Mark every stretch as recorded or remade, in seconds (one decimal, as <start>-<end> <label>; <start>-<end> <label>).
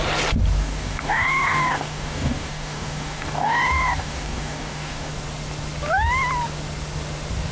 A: 0.0-0.6 recorded; 0.6-5.1 remade; 5.1-7.5 recorded